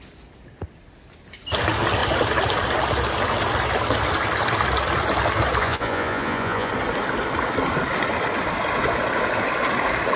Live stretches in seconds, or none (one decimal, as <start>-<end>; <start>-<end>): 0.0-5.6; 6.7-10.2

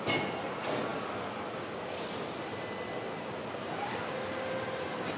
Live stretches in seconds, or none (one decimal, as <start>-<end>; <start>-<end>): 0.0-5.2

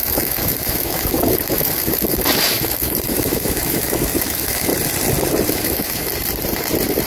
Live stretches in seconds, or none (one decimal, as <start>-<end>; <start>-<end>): 4.7-5.5; 6.1-7.1

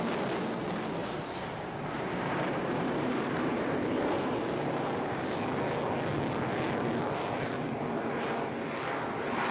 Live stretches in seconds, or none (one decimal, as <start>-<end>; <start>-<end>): 0.0-1.0; 5.4-9.5

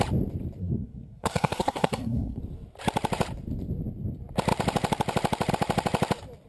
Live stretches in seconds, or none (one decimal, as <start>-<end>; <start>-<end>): 0.0-0.6; 2.4-6.5

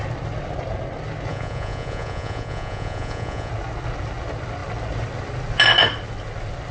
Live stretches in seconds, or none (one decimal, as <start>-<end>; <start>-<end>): 0.0-1.3; 3.5-6.7

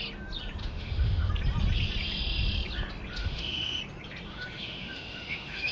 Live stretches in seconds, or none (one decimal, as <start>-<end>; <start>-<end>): 0.0-0.6; 1.3-3.2; 3.8-4.3